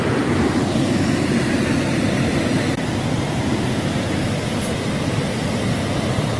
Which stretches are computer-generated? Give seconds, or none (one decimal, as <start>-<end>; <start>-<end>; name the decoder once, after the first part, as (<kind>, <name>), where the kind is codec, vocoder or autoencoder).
none